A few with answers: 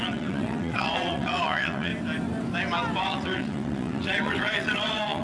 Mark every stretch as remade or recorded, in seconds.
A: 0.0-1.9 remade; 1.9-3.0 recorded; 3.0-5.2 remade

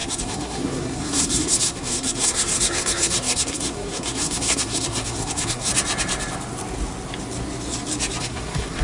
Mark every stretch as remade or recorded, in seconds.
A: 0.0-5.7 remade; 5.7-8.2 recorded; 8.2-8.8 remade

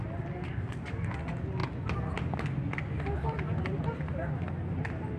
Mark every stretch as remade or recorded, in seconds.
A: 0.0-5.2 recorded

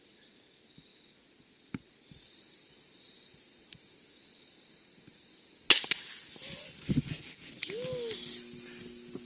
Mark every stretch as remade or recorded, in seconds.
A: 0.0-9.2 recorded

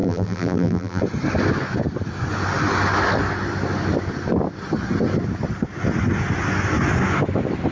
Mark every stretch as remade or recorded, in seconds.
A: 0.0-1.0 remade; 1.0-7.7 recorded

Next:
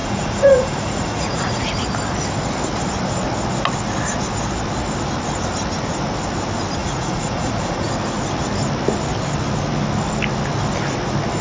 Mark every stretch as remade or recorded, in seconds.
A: 0.0-1.7 remade; 1.7-6.8 recorded; 6.8-7.9 remade; 7.9-11.4 recorded

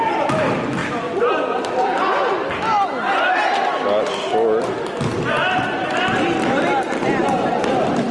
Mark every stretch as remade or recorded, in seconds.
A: 0.0-0.8 recorded; 0.8-1.8 remade; 1.8-8.1 recorded